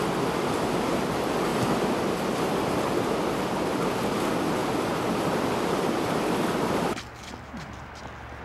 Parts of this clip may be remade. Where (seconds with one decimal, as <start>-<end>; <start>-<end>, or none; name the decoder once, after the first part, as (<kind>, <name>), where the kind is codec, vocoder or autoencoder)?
none